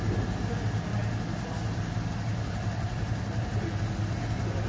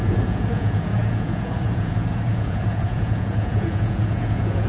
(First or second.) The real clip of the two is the first